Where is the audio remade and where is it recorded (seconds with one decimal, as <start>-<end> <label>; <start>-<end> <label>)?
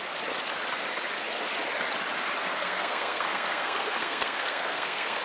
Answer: 0.0-2.4 recorded; 2.4-5.2 remade